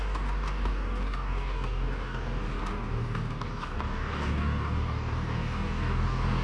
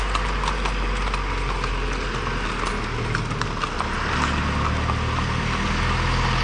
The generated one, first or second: first